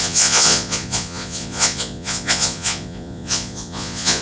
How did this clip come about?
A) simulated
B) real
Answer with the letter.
A